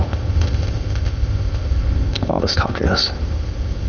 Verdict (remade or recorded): remade